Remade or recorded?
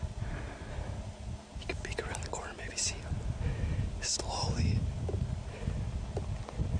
recorded